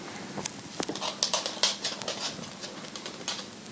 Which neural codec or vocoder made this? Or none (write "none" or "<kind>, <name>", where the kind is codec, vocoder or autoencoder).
none